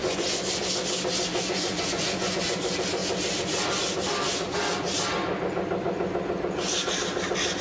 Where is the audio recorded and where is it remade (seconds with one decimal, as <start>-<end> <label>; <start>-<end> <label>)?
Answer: 0.0-0.6 remade; 0.6-1.3 recorded; 1.3-2.4 remade; 2.4-7.6 recorded